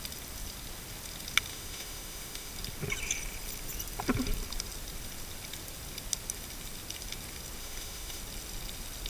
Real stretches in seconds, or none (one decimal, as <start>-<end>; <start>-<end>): 0.0-1.5; 2.5-7.6; 8.2-9.1